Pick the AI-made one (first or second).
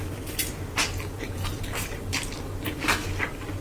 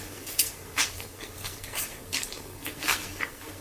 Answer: second